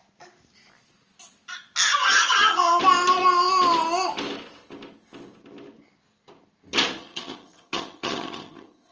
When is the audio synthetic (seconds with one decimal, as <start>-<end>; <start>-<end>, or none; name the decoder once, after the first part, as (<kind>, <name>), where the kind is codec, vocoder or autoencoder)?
2.0-2.8 (vocoder, HiFi-GAN); 7.0-8.9